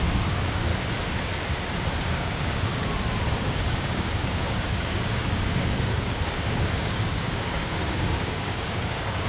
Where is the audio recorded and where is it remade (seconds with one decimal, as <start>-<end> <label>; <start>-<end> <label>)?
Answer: 0.0-0.7 remade; 0.7-2.0 recorded; 2.0-2.7 remade; 2.7-3.3 recorded; 3.3-9.3 remade

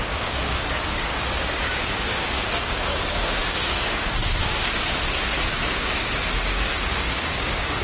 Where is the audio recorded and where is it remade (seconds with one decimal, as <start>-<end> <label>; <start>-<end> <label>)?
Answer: 0.0-4.4 remade; 4.4-5.5 recorded; 5.5-7.8 remade